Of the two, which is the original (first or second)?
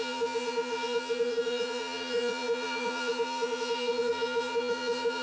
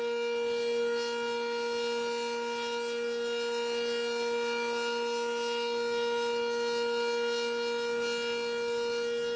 second